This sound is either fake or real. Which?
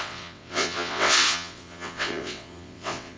fake